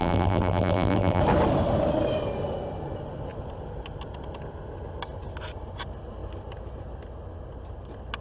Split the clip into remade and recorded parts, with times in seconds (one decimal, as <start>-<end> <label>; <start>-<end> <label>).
0.0-1.2 remade; 1.2-8.2 recorded